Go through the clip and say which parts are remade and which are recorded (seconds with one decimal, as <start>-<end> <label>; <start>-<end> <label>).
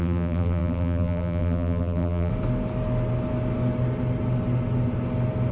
0.0-2.3 remade; 2.3-5.5 recorded